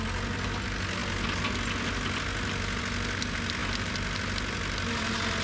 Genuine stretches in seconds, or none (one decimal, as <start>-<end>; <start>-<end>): 0.0-5.4